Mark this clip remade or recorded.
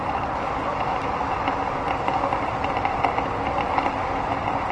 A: recorded